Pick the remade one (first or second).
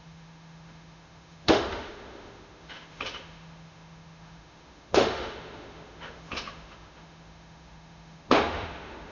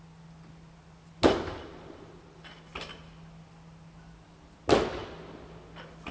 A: first